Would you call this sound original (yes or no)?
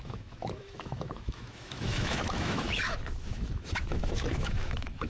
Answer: no